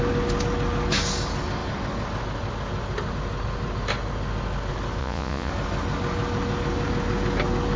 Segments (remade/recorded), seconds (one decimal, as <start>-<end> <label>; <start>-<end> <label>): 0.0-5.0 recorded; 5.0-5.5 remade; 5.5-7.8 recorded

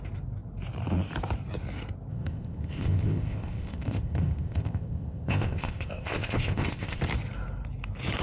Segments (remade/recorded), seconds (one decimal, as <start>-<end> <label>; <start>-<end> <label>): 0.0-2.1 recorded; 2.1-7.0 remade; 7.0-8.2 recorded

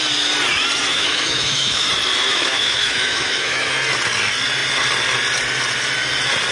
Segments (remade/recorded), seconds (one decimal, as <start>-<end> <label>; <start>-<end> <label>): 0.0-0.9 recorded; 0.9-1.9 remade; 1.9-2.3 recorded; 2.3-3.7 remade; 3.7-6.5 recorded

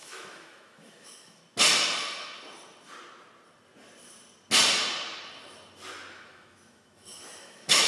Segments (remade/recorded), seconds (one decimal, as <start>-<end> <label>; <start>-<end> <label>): 0.0-1.4 remade; 1.4-6.1 recorded; 6.1-7.9 remade

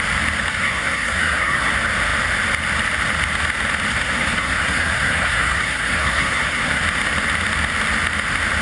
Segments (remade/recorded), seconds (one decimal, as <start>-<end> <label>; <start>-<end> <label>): 0.0-0.5 recorded; 0.5-1.7 remade; 1.7-3.9 recorded; 3.9-6.8 remade; 6.8-8.6 recorded

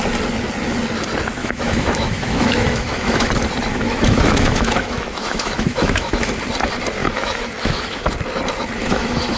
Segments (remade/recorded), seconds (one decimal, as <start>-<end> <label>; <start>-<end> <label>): 0.0-1.4 recorded; 1.4-3.3 remade; 3.3-3.7 recorded; 3.7-6.3 remade; 6.3-7.0 recorded; 7.0-8.1 remade; 8.1-8.8 recorded; 8.8-9.4 remade